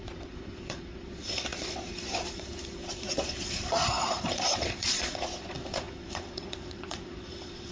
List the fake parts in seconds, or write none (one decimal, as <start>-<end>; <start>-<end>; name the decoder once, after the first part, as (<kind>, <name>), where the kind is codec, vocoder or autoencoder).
0.0-7.7 (vocoder, Vocos)